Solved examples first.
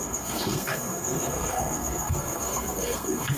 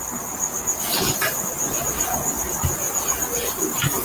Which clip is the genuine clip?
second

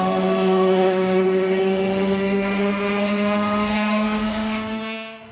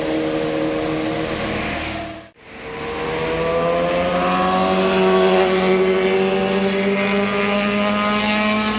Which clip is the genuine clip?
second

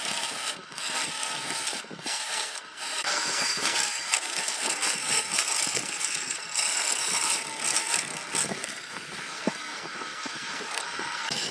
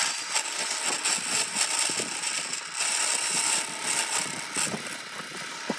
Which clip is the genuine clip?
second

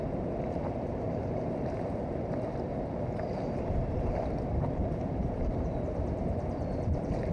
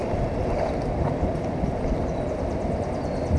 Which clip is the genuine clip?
second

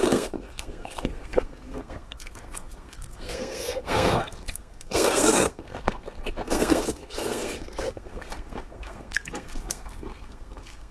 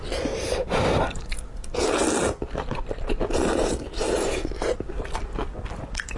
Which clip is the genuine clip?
second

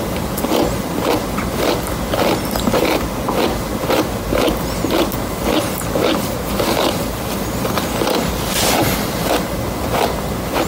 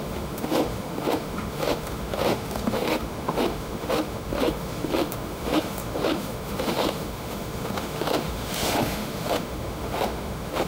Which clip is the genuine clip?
first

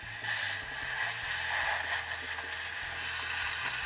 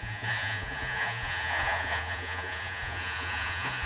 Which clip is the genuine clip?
first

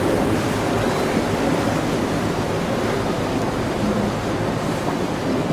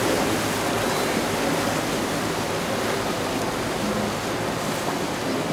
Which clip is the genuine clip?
second